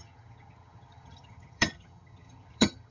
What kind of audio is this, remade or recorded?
remade